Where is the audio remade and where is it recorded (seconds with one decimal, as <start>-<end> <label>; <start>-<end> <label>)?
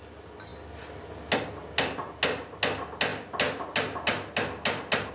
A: 0.0-5.1 recorded